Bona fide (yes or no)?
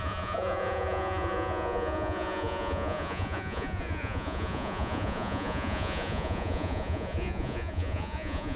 no